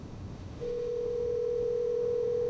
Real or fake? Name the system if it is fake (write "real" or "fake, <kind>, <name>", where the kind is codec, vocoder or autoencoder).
fake, autoencoder, DAC-VAE